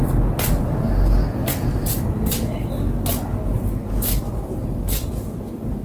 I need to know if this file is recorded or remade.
recorded